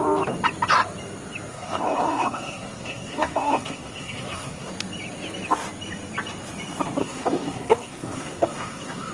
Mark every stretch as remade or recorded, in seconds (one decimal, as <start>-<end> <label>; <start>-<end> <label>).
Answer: 0.0-1.5 recorded; 1.5-4.7 remade; 4.7-7.0 recorded; 7.0-9.1 remade

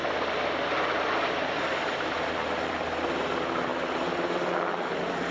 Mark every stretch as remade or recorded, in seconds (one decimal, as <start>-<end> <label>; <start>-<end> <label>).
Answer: 0.0-3.2 remade; 3.2-3.7 recorded; 3.7-4.5 remade; 4.5-5.3 recorded

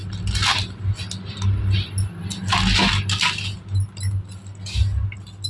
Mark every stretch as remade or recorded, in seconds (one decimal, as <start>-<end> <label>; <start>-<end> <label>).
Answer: 0.0-5.5 recorded

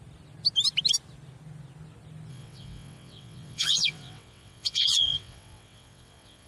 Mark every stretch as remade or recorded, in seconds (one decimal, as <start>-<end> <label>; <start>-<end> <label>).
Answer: 0.0-2.3 recorded; 2.3-6.5 remade

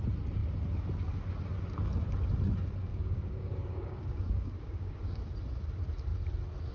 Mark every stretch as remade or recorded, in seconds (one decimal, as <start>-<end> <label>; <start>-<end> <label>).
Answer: 0.0-2.9 recorded; 2.9-5.2 remade; 5.2-6.7 recorded

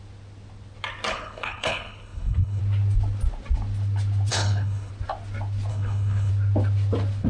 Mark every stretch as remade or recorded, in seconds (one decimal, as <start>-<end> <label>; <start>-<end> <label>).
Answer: 0.0-1.1 recorded; 1.1-2.6 remade; 2.6-4.3 recorded; 4.3-4.9 remade; 4.9-5.7 recorded; 5.7-6.3 remade; 6.3-7.3 recorded